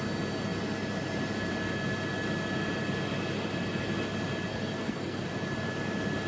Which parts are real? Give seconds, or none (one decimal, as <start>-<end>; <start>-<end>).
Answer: 0.0-4.5; 5.3-6.3